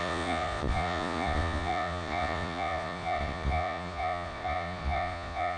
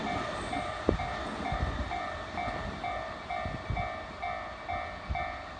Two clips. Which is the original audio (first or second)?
second